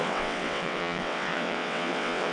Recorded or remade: remade